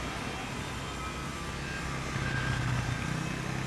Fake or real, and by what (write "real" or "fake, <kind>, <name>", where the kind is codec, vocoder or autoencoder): real